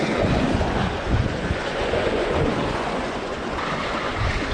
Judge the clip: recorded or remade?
remade